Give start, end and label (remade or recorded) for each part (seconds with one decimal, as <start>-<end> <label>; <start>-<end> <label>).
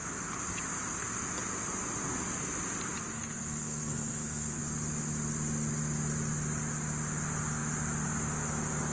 0.0-3.1 recorded; 3.1-4.6 remade; 4.6-8.9 recorded